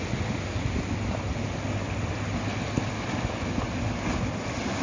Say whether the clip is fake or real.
real